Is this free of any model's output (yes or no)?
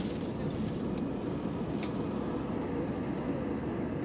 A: yes